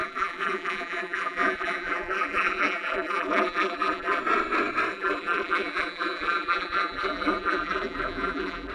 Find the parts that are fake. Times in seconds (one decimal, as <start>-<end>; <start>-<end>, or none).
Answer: 0.0-4.2; 4.9-8.7